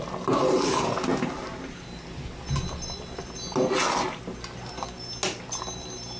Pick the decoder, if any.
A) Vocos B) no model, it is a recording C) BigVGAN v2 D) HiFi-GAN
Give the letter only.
B